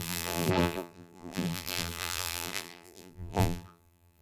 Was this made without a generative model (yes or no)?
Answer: no